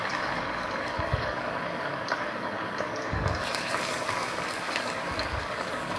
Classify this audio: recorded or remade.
remade